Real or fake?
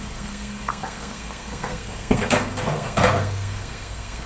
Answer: fake